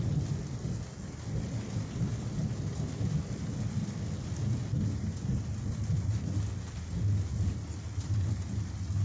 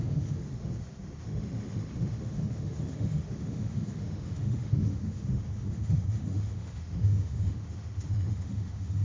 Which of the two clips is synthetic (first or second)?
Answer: second